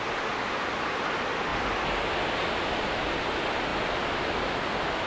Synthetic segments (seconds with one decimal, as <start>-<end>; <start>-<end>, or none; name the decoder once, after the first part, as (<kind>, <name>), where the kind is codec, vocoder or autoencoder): none